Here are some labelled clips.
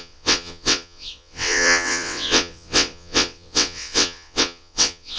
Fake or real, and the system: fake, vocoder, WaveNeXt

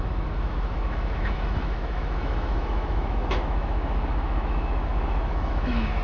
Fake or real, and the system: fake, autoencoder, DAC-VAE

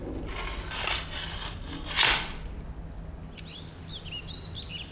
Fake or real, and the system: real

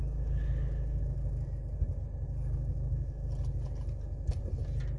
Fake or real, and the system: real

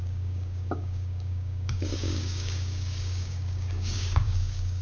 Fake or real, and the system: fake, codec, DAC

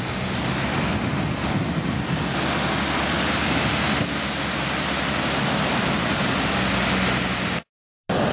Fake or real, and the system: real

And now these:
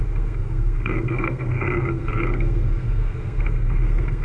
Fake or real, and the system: fake, codec, SNAC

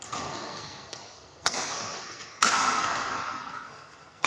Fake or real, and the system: fake, codec, SNAC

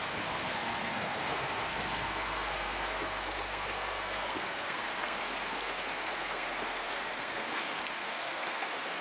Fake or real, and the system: fake, codec, SNAC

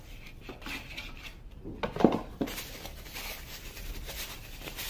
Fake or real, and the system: real